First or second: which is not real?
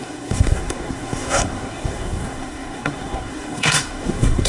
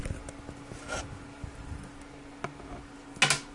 first